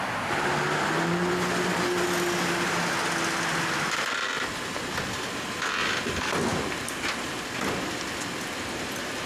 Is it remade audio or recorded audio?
recorded